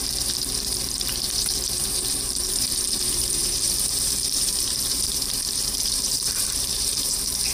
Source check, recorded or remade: remade